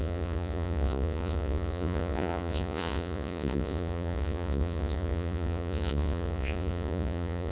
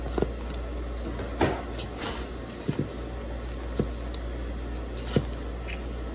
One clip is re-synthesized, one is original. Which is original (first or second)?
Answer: second